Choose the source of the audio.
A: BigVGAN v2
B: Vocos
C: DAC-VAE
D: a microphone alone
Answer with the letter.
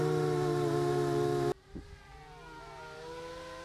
D